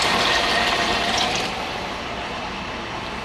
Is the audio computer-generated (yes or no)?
yes